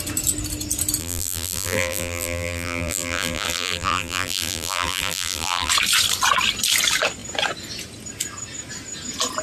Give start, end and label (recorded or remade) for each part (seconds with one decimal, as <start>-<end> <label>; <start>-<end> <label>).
0.0-1.0 recorded; 1.0-5.7 remade; 5.7-9.4 recorded